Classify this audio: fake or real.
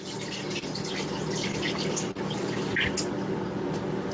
real